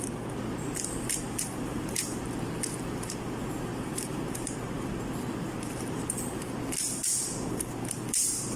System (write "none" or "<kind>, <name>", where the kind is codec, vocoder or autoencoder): vocoder, BigVGAN v2